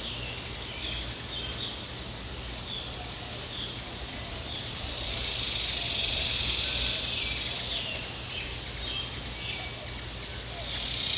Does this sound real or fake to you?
real